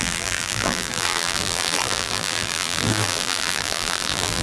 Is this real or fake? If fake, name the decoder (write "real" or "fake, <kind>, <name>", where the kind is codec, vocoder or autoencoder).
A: fake, vocoder, BigVGAN v2